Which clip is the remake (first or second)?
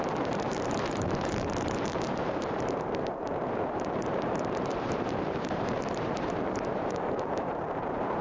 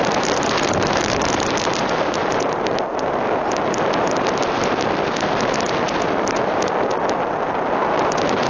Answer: first